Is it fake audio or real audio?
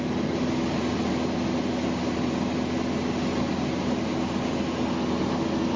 real